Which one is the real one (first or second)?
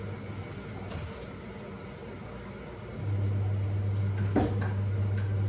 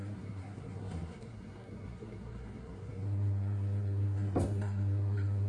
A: first